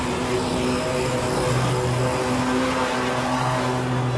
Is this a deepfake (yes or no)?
no